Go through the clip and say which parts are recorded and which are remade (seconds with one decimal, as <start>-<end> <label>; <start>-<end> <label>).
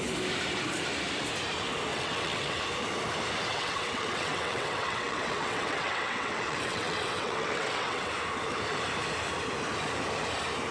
0.0-1.9 recorded; 1.9-2.6 remade; 2.6-3.5 recorded; 3.5-8.1 remade; 8.1-10.7 recorded